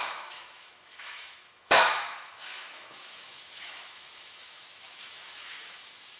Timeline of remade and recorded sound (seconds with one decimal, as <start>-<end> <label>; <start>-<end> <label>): 0.0-6.2 remade